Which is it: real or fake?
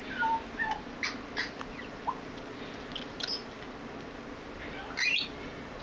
real